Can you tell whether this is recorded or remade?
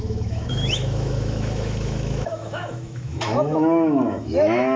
remade